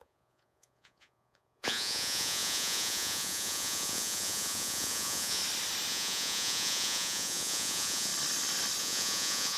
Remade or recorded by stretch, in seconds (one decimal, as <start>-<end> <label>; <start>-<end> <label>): 0.0-5.4 remade; 5.4-5.9 recorded; 5.9-8.1 remade; 8.1-8.8 recorded; 8.8-9.6 remade